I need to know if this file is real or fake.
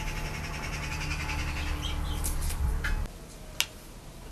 real